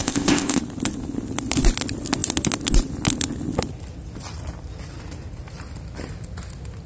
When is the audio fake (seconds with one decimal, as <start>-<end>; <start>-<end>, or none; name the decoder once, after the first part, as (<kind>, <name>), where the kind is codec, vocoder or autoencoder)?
0.0-0.6 (codec, ZipCodec)